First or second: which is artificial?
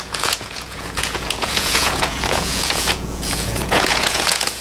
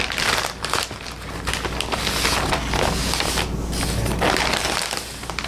first